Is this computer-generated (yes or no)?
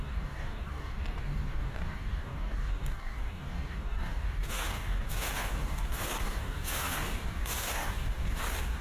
yes